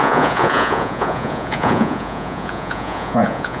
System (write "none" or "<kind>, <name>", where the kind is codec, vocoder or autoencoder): vocoder, Vocos